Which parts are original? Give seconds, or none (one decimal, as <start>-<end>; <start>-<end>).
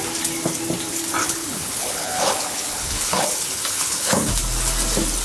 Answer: 0.0-1.2; 4.3-5.2